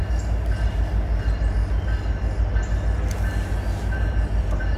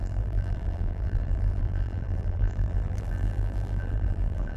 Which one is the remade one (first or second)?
second